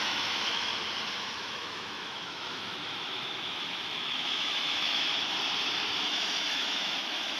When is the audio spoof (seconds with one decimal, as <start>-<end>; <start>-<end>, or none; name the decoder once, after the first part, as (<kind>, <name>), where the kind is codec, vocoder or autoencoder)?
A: 0.0-0.7 (autoencoder, DAC-VAE); 1.2-5.1; 6.0-7.4